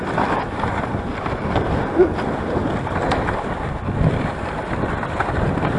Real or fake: real